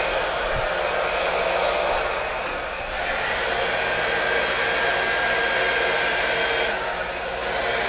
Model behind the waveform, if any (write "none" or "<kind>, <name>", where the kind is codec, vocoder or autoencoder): none